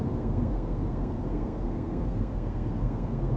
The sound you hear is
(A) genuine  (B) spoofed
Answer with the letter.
B